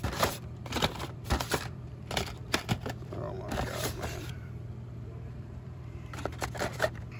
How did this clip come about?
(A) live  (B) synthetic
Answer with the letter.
B